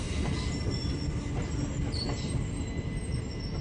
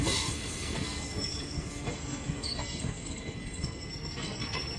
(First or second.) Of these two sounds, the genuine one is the first